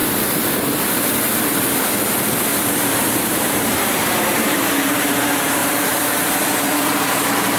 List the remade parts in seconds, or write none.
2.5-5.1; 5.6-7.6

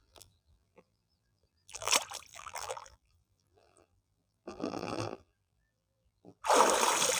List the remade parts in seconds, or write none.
0.0-1.9; 2.3-6.4